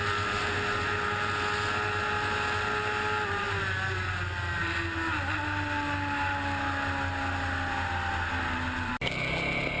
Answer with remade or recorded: recorded